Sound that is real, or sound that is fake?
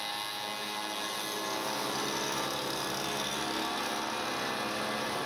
real